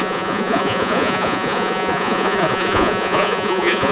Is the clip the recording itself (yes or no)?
no